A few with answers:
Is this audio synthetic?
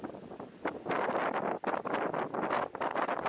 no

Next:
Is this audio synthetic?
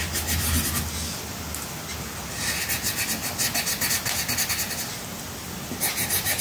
no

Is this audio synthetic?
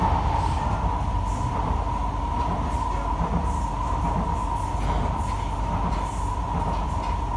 no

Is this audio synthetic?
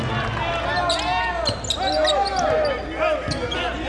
no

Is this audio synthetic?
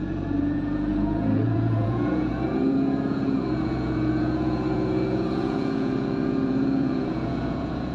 yes